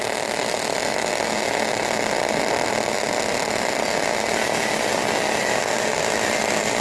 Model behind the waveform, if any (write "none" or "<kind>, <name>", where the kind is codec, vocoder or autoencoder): none